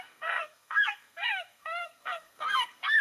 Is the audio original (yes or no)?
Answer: no